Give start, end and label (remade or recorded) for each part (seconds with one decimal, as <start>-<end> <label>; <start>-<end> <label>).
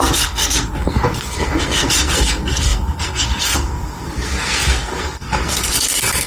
0.0-6.3 remade